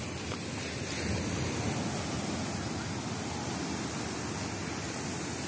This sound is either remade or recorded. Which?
recorded